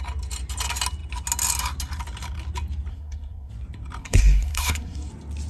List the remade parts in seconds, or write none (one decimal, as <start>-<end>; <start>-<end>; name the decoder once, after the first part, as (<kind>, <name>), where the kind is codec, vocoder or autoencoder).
2.9-3.5 (codec, SNAC); 4.0-5.1